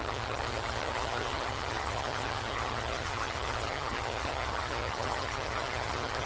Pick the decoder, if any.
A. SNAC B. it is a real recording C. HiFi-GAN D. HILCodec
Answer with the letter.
C